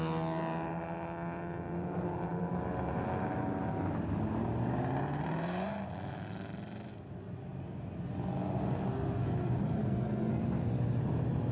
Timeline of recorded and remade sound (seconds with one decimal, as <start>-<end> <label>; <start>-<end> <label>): 0.0-9.8 recorded; 9.8-10.3 remade; 10.3-11.5 recorded